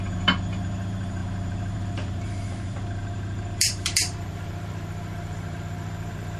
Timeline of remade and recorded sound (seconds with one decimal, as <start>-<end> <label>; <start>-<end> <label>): 0.0-6.4 remade